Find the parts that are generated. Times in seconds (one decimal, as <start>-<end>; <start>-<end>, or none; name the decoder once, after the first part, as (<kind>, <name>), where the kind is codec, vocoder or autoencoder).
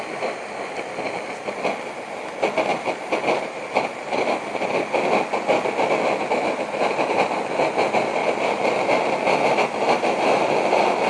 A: none